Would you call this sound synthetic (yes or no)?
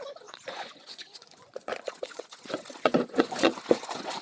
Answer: yes